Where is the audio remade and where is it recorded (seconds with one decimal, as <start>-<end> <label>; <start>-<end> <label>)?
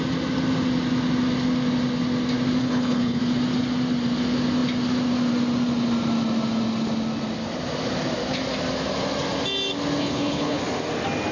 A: 0.0-2.6 recorded; 2.6-3.2 remade; 3.2-10.0 recorded; 10.0-10.6 remade; 10.6-11.3 recorded